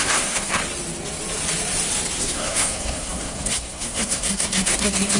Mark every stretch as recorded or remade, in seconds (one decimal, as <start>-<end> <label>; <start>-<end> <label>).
0.0-0.6 remade; 0.6-2.2 recorded; 2.2-5.2 remade